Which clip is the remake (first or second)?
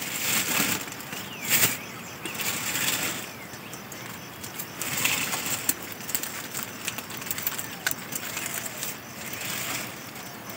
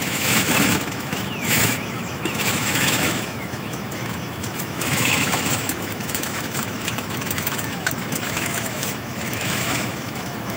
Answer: second